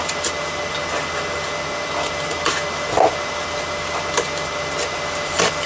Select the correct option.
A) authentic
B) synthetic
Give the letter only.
A